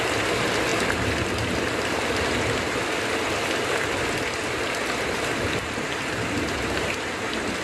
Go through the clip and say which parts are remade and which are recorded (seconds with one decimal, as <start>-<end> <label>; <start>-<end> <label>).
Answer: 0.0-7.6 recorded